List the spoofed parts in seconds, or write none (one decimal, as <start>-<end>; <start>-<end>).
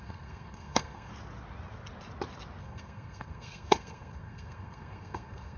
0.0-1.1; 2.6-5.6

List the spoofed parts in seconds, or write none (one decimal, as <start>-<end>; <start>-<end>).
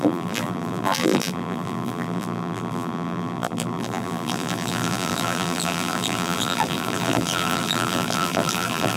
0.0-9.0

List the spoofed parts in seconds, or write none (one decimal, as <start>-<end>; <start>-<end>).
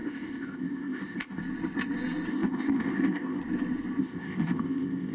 0.0-1.4; 2.3-3.4; 4.0-5.1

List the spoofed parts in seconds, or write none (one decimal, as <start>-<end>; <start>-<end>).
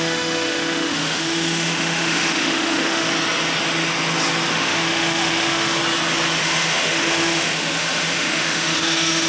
0.0-3.1; 4.5-5.8; 6.4-9.3